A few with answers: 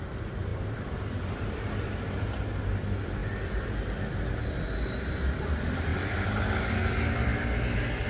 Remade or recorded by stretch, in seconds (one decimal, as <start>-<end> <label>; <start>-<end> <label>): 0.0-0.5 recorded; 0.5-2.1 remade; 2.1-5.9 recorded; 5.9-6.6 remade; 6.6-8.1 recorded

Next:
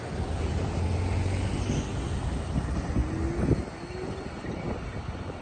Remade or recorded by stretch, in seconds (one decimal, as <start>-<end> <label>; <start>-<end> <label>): 0.0-5.4 recorded

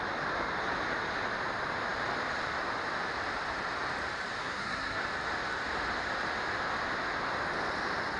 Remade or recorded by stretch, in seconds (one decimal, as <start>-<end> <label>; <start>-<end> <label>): 0.0-4.4 recorded; 4.4-5.0 remade; 5.0-8.2 recorded